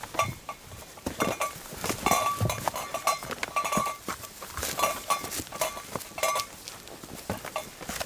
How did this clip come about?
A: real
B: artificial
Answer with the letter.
A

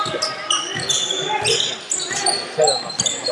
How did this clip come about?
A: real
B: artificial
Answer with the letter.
A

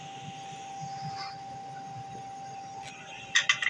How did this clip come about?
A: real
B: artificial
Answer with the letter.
A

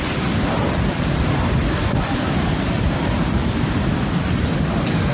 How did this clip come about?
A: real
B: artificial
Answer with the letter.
B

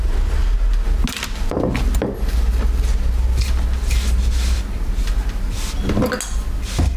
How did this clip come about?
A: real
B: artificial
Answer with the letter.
A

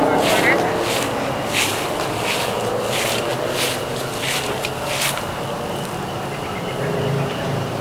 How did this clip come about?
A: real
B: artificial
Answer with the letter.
A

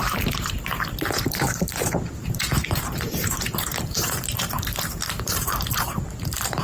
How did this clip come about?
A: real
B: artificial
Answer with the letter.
B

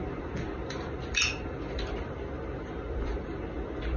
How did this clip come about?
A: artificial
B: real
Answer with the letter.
B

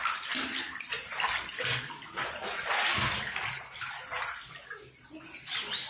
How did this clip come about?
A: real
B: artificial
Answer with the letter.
A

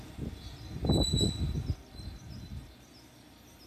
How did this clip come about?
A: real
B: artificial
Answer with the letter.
A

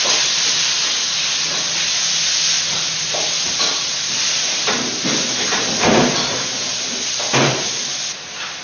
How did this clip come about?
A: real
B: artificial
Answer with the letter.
A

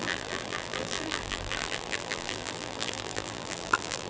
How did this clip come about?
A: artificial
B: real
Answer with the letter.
A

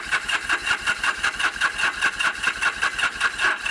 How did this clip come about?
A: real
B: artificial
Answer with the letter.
A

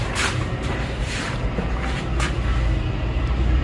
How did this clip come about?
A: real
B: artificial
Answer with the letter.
B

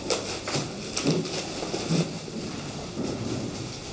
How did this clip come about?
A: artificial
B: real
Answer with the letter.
B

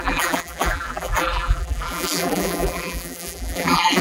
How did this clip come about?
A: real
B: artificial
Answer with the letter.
B